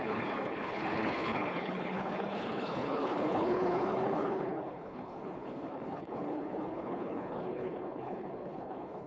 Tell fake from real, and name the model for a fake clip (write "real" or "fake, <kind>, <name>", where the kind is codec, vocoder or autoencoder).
fake, codec, HILCodec